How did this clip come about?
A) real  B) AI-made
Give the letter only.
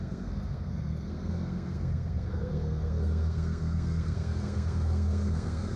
B